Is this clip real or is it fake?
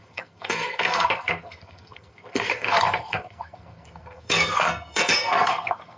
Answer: fake